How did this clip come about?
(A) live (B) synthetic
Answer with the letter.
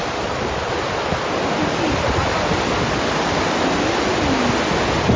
A